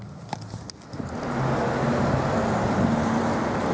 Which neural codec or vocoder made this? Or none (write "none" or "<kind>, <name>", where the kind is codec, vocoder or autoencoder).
none